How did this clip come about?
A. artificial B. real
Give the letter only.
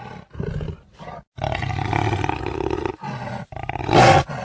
B